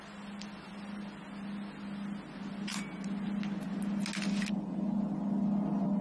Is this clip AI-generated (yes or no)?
no